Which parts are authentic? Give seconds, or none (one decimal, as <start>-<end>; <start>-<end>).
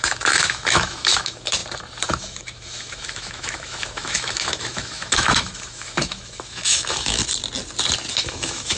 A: 1.6-2.2; 7.2-8.1